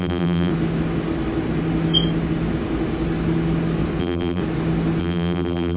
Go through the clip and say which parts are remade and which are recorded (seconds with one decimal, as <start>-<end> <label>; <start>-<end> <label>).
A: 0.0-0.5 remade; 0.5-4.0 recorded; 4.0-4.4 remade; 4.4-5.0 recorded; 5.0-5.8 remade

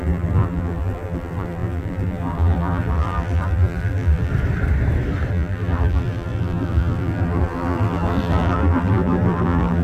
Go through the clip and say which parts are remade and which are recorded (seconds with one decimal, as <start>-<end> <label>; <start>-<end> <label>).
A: 0.0-4.3 remade; 4.3-5.3 recorded; 5.3-9.8 remade

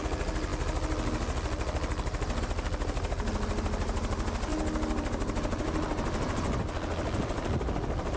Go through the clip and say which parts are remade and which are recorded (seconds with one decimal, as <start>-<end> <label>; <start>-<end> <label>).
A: 0.0-8.2 recorded

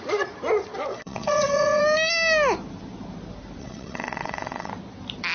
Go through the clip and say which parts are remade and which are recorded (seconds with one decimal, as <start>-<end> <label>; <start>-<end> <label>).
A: 0.0-0.9 recorded; 0.9-1.8 remade; 1.8-3.6 recorded; 3.6-4.7 remade; 4.7-5.3 recorded

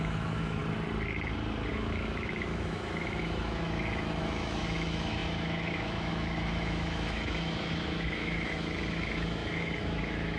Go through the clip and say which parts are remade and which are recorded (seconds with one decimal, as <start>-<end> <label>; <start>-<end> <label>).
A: 0.0-0.6 remade; 0.6-1.7 recorded; 1.7-10.4 remade

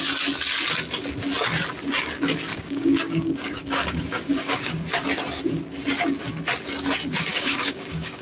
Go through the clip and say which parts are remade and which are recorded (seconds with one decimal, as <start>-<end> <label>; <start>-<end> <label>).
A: 0.0-2.5 recorded; 2.5-4.7 remade; 4.7-7.3 recorded; 7.3-8.2 remade